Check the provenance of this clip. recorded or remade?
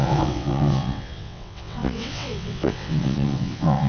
remade